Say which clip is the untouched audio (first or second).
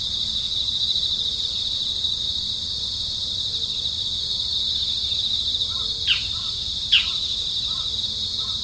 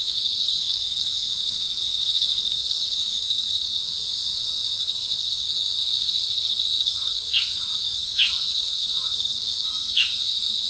first